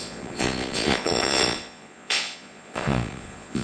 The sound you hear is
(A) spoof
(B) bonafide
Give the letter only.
A